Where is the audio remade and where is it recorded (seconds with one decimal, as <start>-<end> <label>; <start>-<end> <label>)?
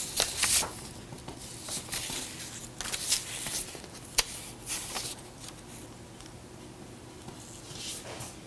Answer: 0.0-8.5 recorded